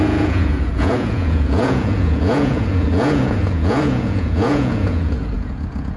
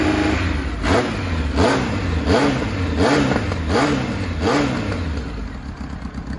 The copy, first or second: first